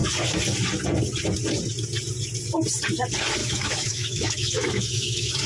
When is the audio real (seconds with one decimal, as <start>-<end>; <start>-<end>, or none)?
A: 0.0-3.4

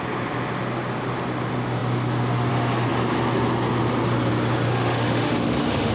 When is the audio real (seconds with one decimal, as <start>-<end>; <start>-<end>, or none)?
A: 0.0-4.7

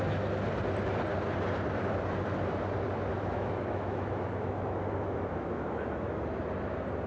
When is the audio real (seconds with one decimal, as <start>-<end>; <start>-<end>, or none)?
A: 0.0-3.1; 6.2-7.1